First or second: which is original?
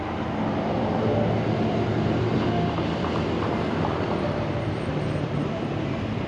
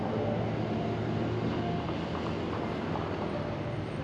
second